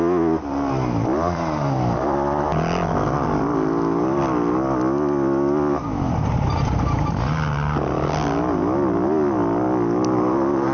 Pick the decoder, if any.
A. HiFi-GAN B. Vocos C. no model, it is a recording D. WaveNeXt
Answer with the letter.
C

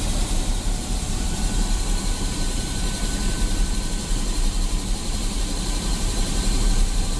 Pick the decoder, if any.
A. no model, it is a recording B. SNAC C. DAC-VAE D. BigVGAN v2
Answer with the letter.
D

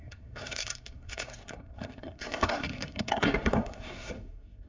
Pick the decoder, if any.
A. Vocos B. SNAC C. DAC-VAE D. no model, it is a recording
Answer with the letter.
B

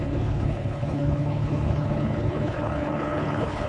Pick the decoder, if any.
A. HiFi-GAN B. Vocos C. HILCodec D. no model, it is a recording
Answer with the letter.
C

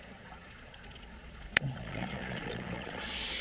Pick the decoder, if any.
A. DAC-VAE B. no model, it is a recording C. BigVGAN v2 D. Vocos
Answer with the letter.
D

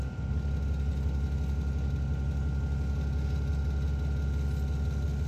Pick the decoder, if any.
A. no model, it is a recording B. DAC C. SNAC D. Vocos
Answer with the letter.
A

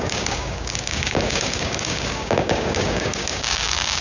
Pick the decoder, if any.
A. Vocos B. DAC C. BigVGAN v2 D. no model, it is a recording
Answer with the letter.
B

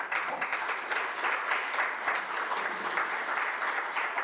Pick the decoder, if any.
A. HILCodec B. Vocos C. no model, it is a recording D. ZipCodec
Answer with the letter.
C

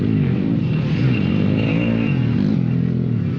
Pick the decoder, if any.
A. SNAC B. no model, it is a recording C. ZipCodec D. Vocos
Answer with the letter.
B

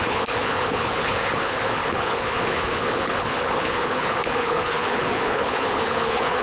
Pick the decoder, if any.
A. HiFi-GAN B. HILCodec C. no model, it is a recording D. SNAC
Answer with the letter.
B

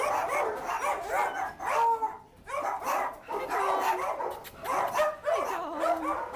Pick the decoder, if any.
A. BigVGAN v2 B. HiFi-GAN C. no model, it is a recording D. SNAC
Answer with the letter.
C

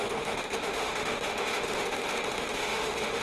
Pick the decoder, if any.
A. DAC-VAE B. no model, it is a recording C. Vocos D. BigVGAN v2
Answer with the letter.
A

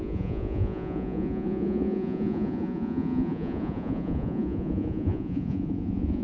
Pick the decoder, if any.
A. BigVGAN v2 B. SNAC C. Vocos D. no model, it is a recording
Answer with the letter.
C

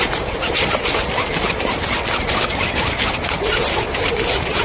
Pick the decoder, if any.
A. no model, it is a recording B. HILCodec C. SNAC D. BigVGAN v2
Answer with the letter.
A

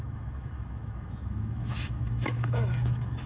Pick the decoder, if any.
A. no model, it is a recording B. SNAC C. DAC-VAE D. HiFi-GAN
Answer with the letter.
C